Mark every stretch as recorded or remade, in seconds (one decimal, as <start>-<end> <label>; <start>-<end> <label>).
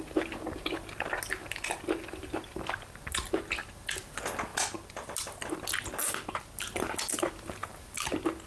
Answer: 0.0-8.5 recorded